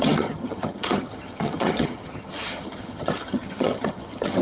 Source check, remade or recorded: remade